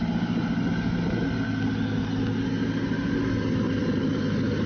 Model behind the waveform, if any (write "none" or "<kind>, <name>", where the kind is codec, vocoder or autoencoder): none